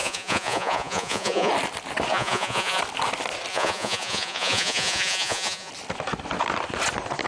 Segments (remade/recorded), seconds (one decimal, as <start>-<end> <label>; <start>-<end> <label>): 0.0-1.5 remade; 1.5-2.1 recorded; 2.1-2.8 remade; 2.8-3.5 recorded; 3.5-5.7 remade; 5.7-7.3 recorded